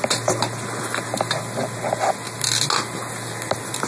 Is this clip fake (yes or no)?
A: no